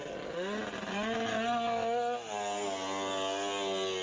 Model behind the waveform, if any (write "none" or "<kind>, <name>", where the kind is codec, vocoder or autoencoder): none